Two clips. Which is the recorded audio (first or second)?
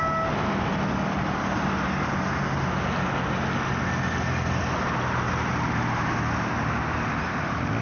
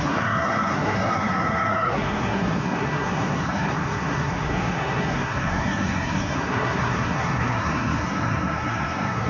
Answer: first